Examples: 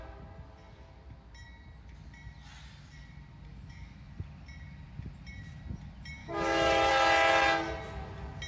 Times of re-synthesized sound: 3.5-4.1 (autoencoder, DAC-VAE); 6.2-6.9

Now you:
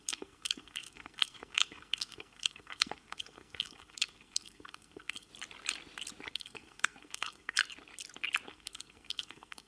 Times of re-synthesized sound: 0.0-5.3 (codec, SNAC); 6.3-7.6; 8.5-9.7